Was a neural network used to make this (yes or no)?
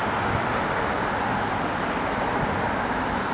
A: no